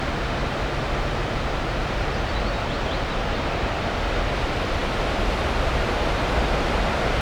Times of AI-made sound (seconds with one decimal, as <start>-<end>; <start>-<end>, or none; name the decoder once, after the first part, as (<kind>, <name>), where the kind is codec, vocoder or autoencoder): none